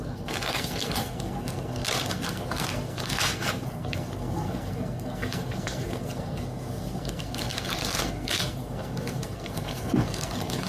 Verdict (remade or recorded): remade